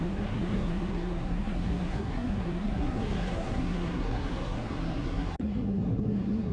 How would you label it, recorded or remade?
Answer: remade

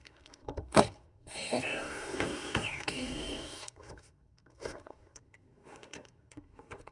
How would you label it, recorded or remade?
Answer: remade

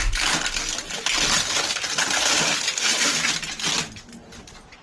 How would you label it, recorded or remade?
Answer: recorded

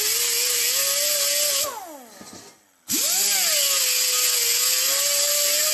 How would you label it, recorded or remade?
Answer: recorded